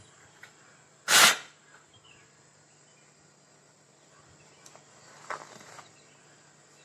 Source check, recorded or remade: recorded